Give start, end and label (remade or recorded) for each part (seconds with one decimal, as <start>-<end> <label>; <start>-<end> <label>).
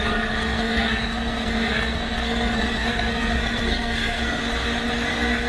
0.0-4.4 remade; 4.4-4.9 recorded; 4.9-5.5 remade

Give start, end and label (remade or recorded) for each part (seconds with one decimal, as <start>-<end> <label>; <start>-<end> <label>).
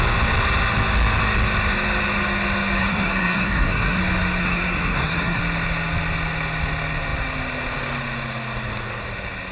0.0-2.8 recorded; 2.8-4.0 remade; 4.0-4.4 recorded; 4.4-5.4 remade; 5.4-9.5 recorded